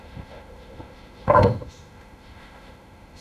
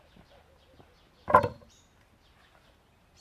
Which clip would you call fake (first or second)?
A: first